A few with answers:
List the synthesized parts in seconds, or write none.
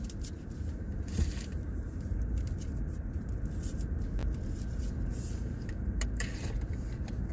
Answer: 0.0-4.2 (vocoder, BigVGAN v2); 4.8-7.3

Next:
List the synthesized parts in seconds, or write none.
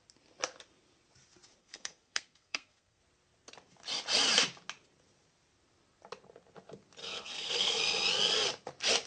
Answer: 1.6-3.0 (codec, SNAC); 7.0-7.8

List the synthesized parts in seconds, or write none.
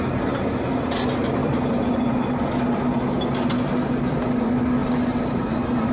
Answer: 1.4-2.1 (vocoder, BigVGAN v2)